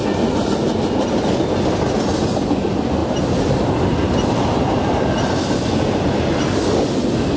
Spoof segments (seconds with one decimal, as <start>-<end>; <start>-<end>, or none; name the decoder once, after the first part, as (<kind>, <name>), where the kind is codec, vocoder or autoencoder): none